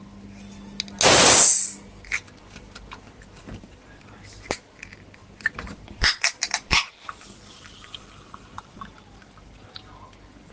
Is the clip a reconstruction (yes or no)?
no